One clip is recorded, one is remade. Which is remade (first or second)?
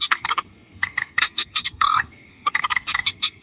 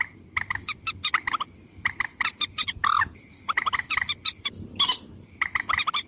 first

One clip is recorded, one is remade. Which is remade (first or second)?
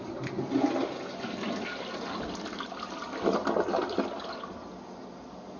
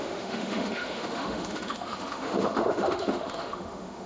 second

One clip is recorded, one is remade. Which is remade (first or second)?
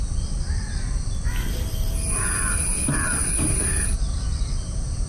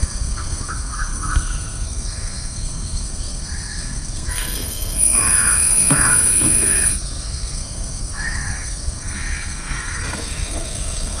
second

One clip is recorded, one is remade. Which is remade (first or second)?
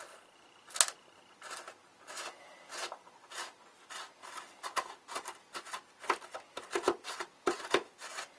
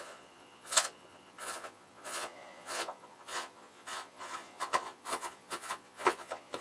second